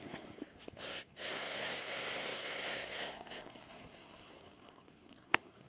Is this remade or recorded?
remade